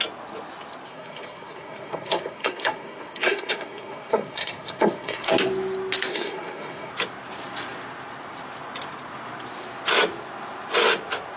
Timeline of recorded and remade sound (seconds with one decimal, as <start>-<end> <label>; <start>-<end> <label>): 0.0-0.9 recorded; 0.9-5.3 remade; 5.3-6.1 recorded; 6.1-6.9 remade; 6.9-11.4 recorded